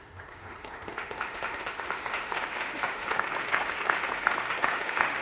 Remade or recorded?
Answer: remade